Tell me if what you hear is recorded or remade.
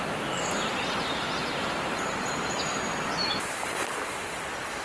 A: recorded